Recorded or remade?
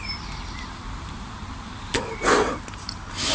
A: recorded